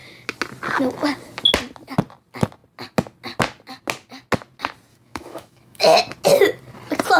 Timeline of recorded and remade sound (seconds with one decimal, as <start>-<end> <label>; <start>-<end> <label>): 0.0-4.9 recorded; 4.9-6.0 remade; 6.0-7.2 recorded